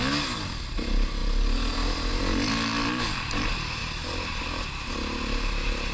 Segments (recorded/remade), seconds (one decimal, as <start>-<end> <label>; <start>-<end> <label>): 0.0-5.9 recorded

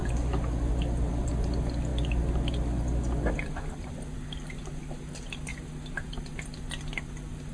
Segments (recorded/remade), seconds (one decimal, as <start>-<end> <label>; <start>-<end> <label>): 0.0-1.1 recorded; 1.1-1.9 remade; 1.9-3.3 recorded; 3.3-5.5 remade; 5.5-7.5 recorded

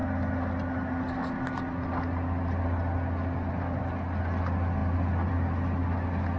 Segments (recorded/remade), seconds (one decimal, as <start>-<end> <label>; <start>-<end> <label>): 0.0-6.4 recorded

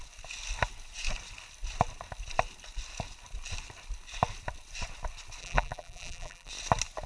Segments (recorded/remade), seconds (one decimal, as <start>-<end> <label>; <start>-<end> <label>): 0.0-5.4 recorded; 5.4-6.5 remade; 6.5-7.1 recorded

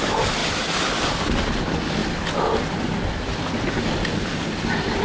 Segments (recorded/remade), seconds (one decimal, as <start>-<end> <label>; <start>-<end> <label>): 0.0-2.0 remade; 2.0-2.7 recorded; 2.7-3.3 remade; 3.3-4.2 recorded; 4.2-5.0 remade

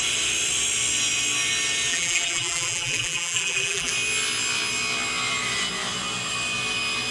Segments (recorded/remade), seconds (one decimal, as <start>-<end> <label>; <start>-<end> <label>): 0.0-1.9 recorded; 1.9-3.9 remade; 3.9-7.1 recorded